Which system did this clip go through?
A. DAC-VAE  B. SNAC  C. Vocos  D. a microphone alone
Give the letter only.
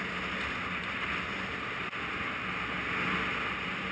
D